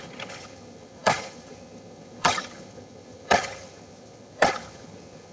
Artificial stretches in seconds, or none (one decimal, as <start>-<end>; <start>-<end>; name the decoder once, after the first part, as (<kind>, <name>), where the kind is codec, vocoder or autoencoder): 0.0-5.3 (vocoder, HiFi-GAN)